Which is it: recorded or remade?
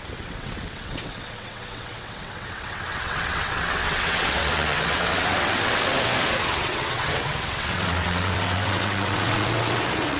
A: remade